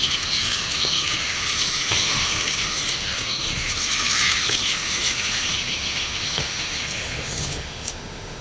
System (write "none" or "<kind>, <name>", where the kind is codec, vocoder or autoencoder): autoencoder, DAC-VAE